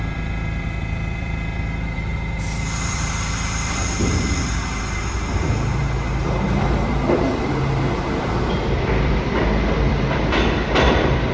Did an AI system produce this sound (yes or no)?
yes